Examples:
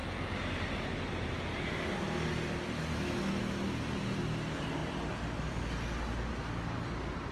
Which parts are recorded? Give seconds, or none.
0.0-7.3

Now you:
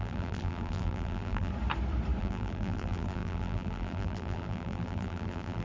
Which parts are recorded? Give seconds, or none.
1.5-2.2

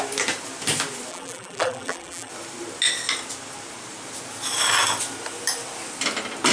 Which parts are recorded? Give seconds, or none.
0.0-1.1; 2.3-6.5